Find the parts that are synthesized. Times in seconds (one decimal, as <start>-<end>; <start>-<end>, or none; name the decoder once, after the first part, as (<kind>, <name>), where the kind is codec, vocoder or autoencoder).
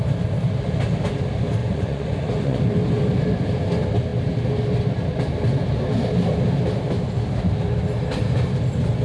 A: 1.6-2.6 (vocoder, Vocos)